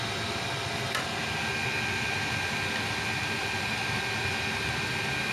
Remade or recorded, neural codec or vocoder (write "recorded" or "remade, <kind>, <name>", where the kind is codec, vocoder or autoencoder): recorded